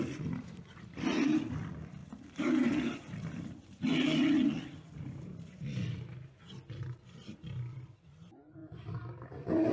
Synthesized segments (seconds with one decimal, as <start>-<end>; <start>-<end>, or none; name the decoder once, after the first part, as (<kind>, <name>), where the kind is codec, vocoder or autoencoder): none